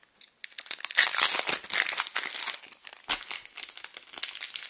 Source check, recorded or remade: recorded